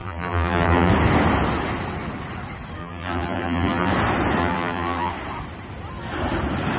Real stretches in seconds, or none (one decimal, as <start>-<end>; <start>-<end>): 0.9-2.8; 3.9-4.4; 5.1-6.8